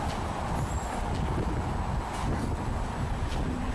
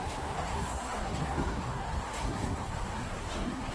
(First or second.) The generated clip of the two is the second